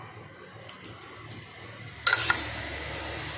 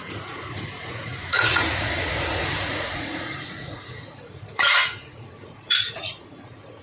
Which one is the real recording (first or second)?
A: first